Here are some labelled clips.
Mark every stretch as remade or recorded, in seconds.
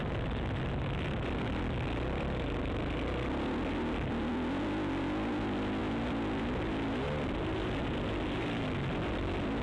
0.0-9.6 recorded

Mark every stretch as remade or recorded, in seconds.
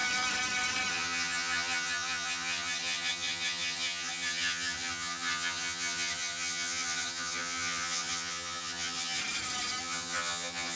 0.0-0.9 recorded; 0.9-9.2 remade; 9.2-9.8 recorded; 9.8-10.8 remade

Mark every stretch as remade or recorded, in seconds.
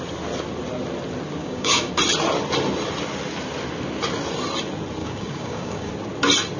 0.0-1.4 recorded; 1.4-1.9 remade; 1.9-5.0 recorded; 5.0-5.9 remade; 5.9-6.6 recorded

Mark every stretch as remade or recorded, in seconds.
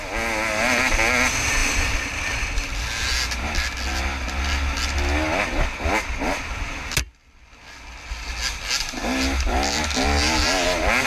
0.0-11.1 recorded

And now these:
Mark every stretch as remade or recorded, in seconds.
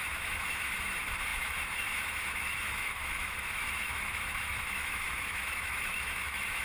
0.0-6.6 remade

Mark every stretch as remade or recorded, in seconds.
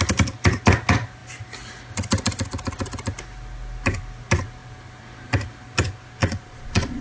0.0-6.2 recorded; 6.2-7.0 remade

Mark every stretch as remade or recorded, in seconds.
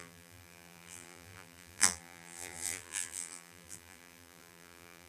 0.0-5.1 remade